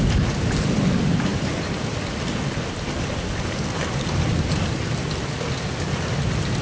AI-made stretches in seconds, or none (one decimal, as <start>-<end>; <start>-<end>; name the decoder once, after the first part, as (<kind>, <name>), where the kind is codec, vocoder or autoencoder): none